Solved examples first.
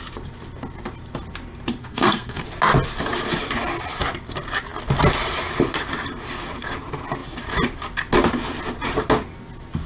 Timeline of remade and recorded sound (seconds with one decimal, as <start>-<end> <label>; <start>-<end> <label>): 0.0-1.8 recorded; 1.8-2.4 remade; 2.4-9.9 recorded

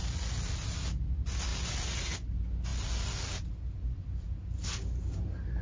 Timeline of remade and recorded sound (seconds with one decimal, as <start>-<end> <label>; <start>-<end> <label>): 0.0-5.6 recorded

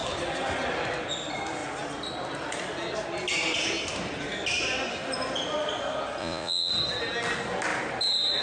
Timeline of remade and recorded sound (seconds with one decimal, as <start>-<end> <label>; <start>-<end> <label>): 0.0-6.2 recorded; 6.2-6.7 remade; 6.7-8.4 recorded